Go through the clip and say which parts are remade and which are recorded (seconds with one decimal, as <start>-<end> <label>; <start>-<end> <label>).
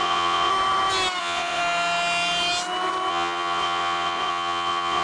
0.0-0.5 remade; 0.5-1.2 recorded; 1.2-1.6 remade; 1.6-3.1 recorded; 3.1-5.0 remade